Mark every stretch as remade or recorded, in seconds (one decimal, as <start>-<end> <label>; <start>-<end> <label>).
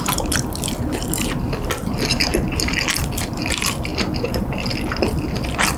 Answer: 0.0-2.3 remade; 2.3-3.0 recorded; 3.0-3.9 remade; 3.9-4.4 recorded; 4.4-5.8 remade